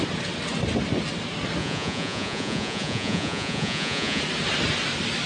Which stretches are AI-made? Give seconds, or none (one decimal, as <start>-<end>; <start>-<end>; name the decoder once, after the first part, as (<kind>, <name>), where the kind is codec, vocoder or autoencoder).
1.6-4.2 (vocoder, Vocos)